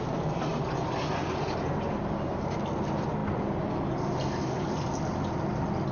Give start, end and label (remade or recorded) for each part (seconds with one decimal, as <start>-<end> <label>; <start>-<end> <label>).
0.0-5.9 recorded

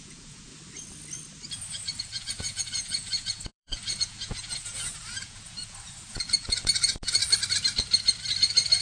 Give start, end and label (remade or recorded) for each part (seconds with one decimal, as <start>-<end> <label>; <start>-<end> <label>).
0.0-0.5 remade; 0.5-2.0 recorded; 2.0-7.2 remade; 7.2-8.8 recorded

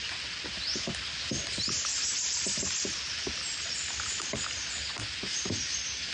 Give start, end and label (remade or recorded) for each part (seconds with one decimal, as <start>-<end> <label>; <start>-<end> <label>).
0.0-6.1 recorded

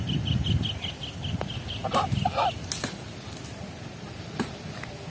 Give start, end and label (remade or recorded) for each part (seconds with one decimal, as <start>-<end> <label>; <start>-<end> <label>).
0.0-5.1 recorded

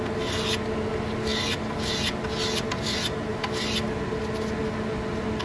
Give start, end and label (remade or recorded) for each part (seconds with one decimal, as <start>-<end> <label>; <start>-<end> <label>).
0.0-5.4 recorded

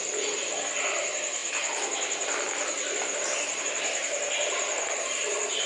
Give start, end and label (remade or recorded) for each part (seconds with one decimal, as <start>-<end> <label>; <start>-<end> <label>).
0.0-5.7 recorded